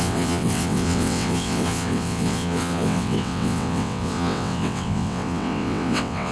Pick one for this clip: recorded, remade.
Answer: remade